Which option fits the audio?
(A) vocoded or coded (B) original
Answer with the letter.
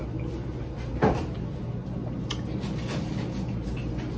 B